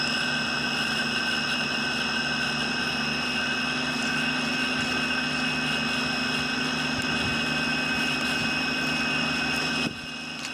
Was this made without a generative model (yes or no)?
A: yes